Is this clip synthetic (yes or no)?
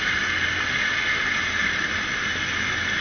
no